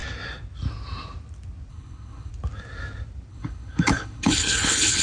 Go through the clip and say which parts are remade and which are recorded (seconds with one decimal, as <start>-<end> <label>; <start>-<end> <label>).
0.0-1.7 recorded; 1.7-2.3 remade; 2.3-3.3 recorded; 3.3-5.0 remade